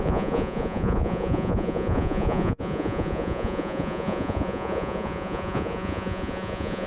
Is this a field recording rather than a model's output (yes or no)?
no